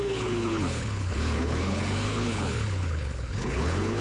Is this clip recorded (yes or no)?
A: no